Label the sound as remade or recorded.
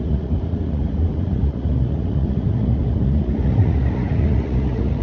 remade